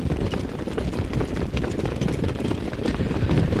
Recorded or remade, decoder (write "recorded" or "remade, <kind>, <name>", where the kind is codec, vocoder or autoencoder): recorded